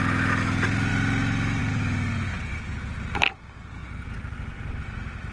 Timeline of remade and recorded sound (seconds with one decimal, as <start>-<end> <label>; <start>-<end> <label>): 0.0-3.8 recorded; 3.8-4.8 remade; 4.8-5.3 recorded